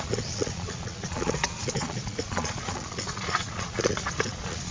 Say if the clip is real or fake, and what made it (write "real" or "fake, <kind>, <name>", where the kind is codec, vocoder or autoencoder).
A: fake, vocoder, Vocos